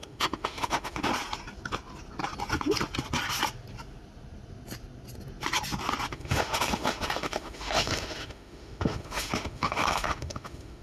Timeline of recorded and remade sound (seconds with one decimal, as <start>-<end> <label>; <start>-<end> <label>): 0.0-1.1 remade; 1.1-6.1 recorded; 6.1-10.8 remade